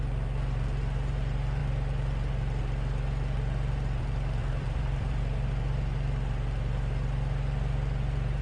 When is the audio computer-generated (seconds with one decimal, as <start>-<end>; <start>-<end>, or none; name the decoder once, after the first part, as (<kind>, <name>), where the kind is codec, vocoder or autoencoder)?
4.4-5.2 (vocoder, BigVGAN v2)